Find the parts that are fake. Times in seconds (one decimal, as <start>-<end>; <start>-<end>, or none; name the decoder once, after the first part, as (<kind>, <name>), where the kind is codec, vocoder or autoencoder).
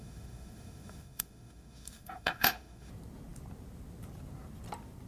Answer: 0.0-2.9 (autoencoder, DAC-VAE)